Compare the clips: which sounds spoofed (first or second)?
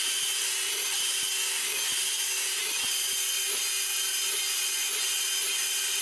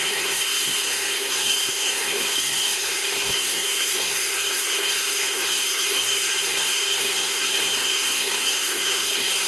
second